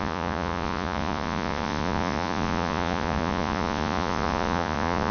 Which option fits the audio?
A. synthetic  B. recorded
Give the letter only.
A